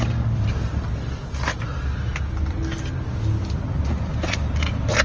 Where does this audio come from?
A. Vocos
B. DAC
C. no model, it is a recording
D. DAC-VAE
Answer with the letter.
C